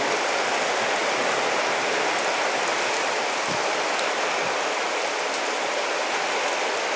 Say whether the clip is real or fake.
real